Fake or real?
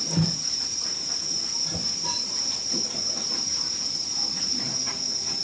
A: real